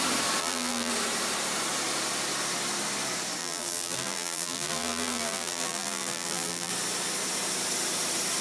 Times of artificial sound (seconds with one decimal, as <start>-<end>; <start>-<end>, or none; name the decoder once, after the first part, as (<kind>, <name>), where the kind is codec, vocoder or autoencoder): 0.4-0.9 (vocoder, BigVGAN v2); 3.4-6.7